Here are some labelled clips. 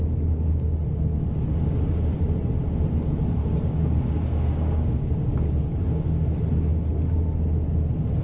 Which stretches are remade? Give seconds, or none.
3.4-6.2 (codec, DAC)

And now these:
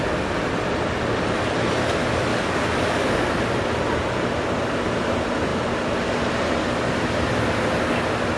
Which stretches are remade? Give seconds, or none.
2.3-3.3 (codec, DAC)

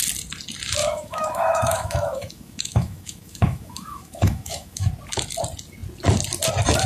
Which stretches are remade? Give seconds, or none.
0.8-4.9 (autoencoder, DAC-VAE)

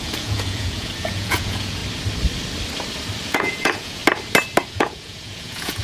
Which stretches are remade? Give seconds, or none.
0.0-1.8 (vocoder, Vocos); 3.3-4.0; 4.7-5.8

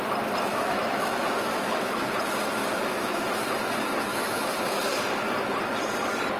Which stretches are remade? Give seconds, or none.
0.5-2.1 (autoencoder, DAC-VAE); 2.6-3.5; 4.1-4.9

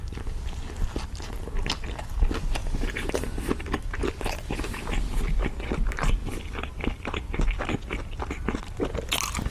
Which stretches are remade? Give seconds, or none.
2.6-4.0 (vocoder, BigVGAN v2); 6.2-7.1